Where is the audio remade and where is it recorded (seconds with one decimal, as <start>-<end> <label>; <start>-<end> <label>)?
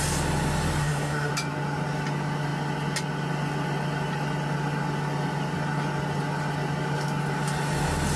0.0-0.8 recorded; 0.8-1.3 remade; 1.3-8.2 recorded